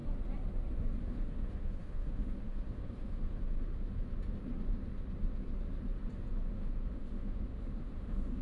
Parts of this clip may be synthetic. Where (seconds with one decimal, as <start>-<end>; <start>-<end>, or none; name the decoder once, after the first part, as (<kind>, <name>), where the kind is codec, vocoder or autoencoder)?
1.0-3.6 (autoencoder, DAC-VAE); 6.5-8.4